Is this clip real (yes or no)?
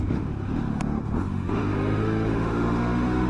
no